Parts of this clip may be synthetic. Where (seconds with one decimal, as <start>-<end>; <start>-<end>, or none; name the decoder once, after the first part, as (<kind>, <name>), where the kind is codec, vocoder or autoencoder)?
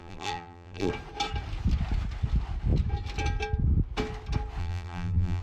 0.0-0.9 (vocoder, BigVGAN v2); 4.6-5.4